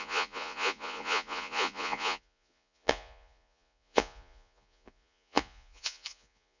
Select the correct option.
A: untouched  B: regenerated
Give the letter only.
B